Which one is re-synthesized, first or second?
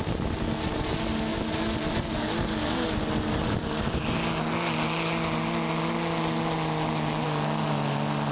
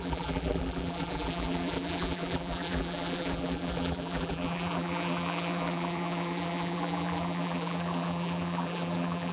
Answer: second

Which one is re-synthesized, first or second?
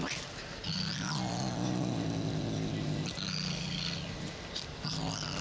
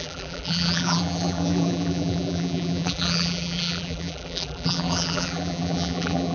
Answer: second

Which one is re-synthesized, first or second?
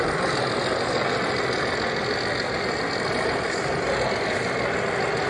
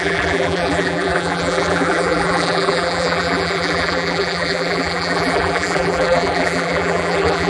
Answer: second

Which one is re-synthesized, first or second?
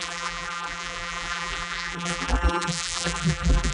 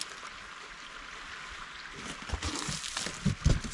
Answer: first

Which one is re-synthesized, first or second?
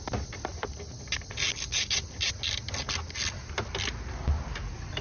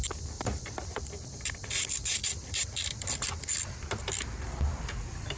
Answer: second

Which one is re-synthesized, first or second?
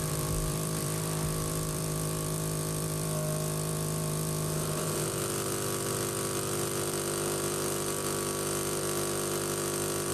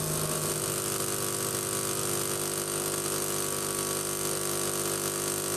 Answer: first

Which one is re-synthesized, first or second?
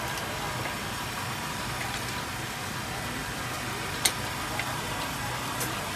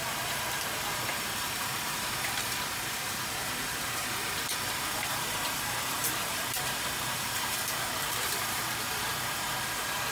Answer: second